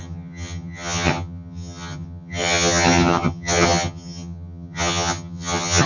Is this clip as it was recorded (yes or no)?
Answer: no